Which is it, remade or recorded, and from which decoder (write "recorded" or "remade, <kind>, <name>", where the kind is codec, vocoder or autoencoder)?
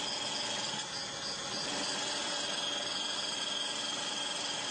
recorded